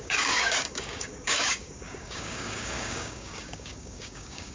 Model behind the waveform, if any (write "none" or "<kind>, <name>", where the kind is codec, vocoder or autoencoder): codec, DAC